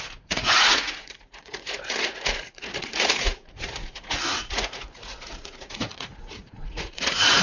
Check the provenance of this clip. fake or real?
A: fake